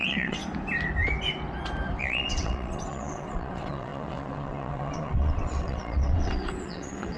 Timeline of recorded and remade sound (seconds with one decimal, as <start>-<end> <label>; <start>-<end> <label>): 0.0-0.4 remade; 0.4-2.0 recorded; 2.0-7.2 remade